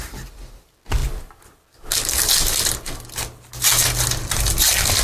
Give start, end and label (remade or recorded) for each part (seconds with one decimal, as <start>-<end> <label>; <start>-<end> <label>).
0.0-5.0 recorded